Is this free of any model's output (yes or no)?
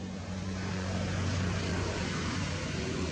no